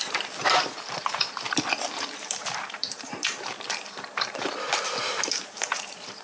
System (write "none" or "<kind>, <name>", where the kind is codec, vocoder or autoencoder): vocoder, BigVGAN v2